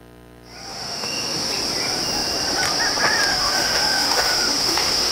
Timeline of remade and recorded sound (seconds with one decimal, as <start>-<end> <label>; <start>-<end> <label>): 0.0-0.7 recorded; 0.7-1.5 remade; 1.5-3.3 recorded; 3.3-5.1 remade